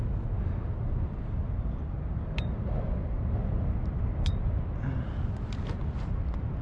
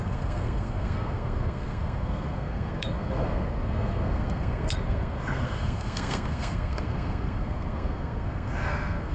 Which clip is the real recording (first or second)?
first